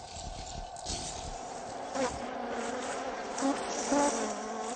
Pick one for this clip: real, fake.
real